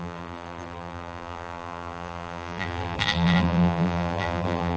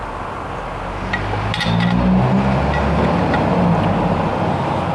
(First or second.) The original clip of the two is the second